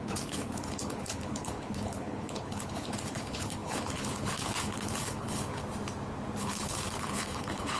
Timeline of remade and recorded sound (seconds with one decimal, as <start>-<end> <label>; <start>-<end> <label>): 0.0-5.6 remade; 5.6-6.4 recorded; 6.4-7.8 remade